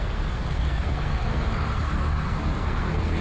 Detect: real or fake fake